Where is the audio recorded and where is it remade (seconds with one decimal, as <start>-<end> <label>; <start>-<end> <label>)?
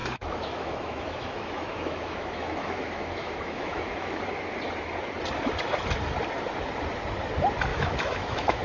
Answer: 0.0-4.2 remade; 4.2-7.7 recorded; 7.7-8.6 remade